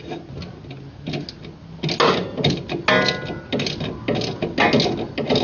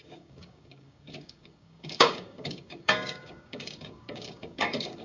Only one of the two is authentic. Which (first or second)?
first